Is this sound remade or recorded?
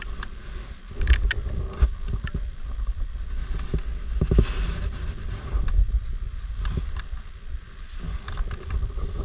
recorded